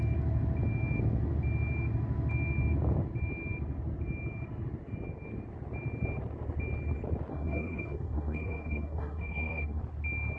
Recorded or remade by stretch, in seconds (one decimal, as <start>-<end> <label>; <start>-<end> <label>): 0.0-7.3 recorded; 7.3-9.8 remade; 9.8-10.4 recorded